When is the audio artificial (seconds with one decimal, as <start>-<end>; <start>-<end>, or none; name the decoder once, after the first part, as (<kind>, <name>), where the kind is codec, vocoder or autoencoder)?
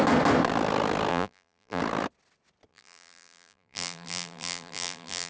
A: 1.1-1.8 (vocoder, BigVGAN v2); 2.7-5.3